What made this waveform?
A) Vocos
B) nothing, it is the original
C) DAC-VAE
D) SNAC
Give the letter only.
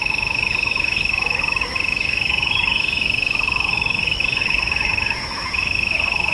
C